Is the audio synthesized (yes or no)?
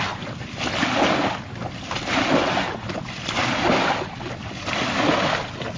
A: no